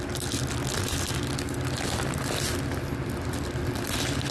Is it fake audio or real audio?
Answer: real